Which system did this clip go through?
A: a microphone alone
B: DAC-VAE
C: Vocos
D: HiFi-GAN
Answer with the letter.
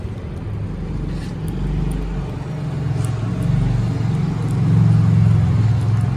A